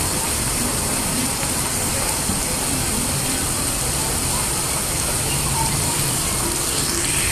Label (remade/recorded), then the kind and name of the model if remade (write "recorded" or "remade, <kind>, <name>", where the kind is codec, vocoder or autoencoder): remade, vocoder, BigVGAN v2